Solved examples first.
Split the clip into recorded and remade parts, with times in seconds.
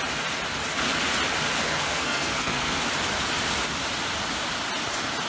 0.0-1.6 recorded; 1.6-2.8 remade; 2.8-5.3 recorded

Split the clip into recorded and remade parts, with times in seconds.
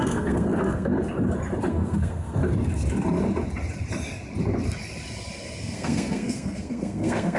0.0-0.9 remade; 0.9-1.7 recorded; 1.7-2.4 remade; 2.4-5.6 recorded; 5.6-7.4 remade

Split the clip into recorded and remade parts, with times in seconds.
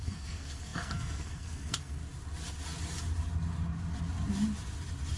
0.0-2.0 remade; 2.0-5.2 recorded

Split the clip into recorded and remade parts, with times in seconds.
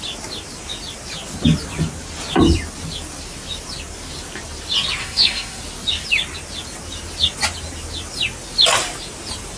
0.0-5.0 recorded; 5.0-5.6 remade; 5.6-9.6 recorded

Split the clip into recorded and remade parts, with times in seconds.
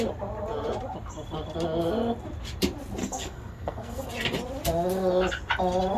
0.0-3.0 recorded; 3.0-4.1 remade; 4.1-6.0 recorded